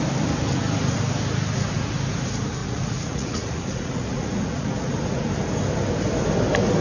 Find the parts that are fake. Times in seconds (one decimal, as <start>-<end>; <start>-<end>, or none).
2.6-4.9